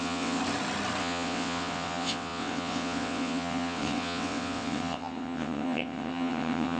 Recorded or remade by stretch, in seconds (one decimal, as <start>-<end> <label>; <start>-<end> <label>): 0.0-0.4 remade; 0.4-1.0 recorded; 1.0-6.8 remade